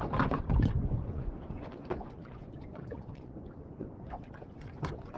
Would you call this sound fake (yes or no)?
yes